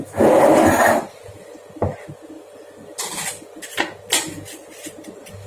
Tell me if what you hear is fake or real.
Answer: real